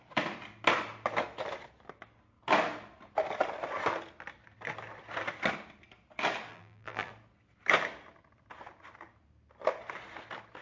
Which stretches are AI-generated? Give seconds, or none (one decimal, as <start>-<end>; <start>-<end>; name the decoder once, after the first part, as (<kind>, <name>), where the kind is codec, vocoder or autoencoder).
6.5-7.1 (vocoder, BigVGAN v2)